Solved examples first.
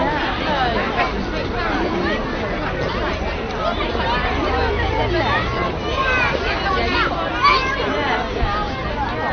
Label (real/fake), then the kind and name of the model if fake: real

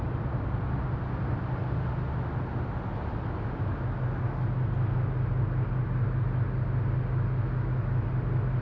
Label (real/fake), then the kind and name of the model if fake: real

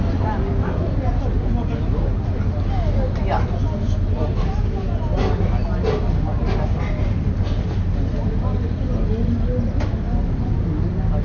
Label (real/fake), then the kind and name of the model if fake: real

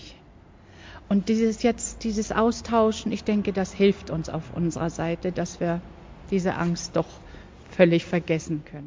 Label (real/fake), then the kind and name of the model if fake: real